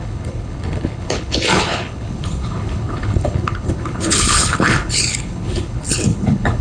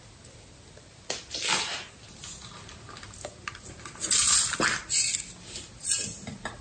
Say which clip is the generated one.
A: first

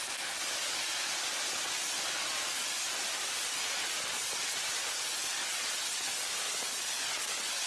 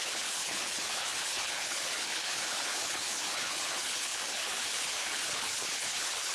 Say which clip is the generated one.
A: second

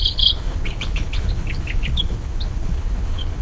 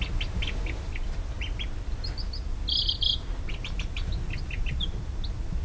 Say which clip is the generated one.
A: first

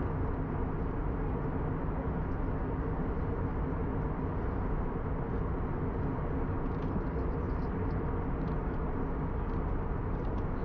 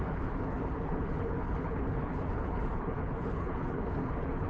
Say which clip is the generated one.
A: second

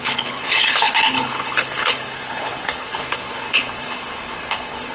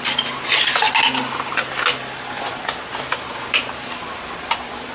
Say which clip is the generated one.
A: first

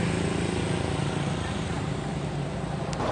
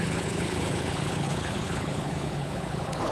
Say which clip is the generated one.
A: second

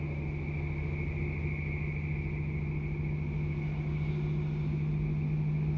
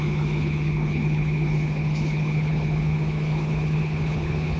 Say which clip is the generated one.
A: second